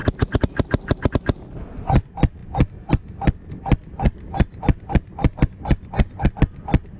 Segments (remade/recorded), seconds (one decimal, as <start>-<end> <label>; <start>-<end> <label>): 0.0-7.0 recorded